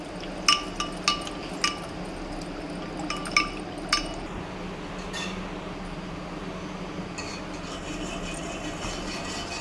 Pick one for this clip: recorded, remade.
recorded